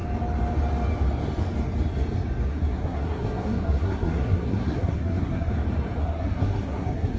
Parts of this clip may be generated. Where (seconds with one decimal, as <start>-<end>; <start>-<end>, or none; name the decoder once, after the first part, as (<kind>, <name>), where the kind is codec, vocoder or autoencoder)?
2.5-5.5 (codec, SNAC); 6.0-7.2